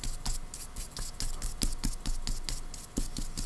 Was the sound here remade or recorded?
recorded